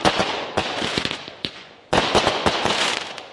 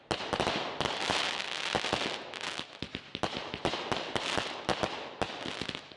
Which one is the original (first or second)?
second